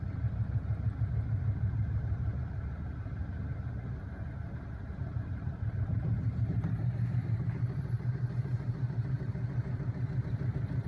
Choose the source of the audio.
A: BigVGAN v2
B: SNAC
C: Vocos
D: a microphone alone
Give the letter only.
A